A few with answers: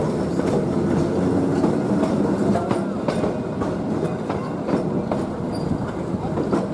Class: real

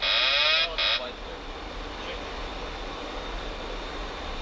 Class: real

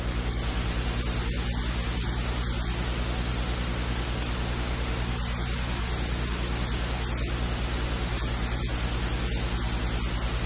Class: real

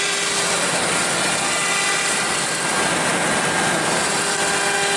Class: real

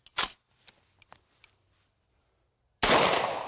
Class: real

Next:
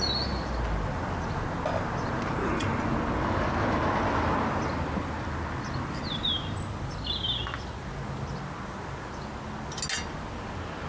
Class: real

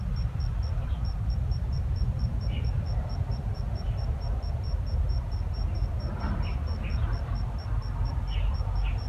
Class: fake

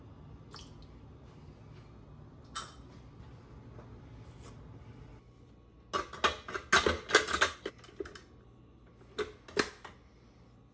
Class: real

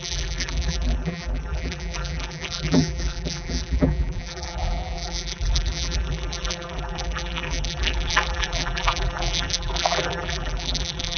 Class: fake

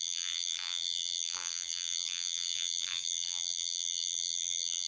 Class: fake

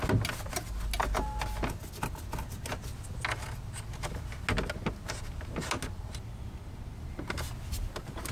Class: real